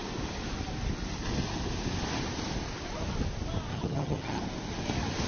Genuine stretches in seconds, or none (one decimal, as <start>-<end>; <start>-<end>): 0.0-3.7; 4.4-5.3

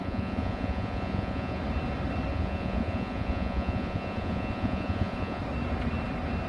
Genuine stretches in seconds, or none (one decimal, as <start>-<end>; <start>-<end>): 1.6-2.3; 5.4-6.5

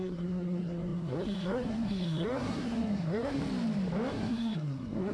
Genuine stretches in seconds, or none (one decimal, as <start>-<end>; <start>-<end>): 3.4-4.1